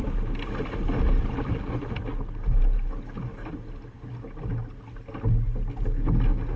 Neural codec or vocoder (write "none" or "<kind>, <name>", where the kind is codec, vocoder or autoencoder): none